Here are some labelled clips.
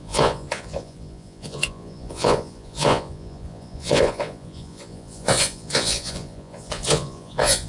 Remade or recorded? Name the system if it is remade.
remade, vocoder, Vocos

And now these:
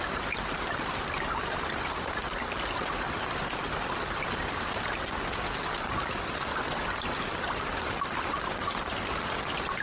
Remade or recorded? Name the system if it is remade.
recorded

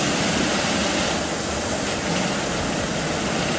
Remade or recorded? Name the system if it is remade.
recorded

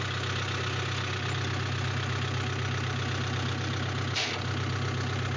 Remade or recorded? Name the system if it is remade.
recorded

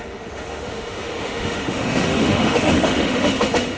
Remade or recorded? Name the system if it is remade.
remade, autoencoder, DAC-VAE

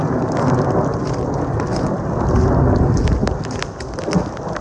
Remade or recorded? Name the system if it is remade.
recorded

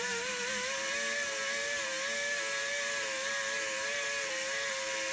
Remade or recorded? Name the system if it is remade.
remade, vocoder, BigVGAN v2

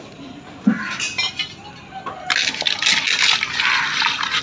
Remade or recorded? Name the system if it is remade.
recorded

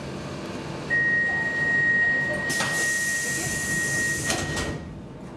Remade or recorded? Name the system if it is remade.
recorded